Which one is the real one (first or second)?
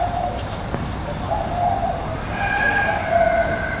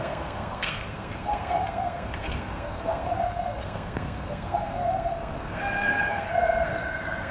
first